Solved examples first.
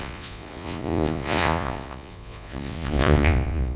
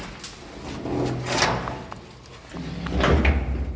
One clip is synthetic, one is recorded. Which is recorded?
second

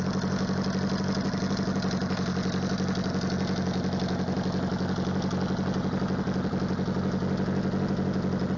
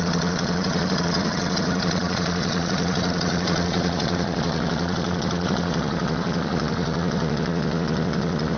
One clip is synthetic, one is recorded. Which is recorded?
first